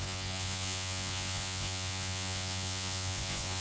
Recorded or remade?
remade